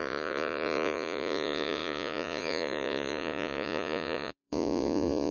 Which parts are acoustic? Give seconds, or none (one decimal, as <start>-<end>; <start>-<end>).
none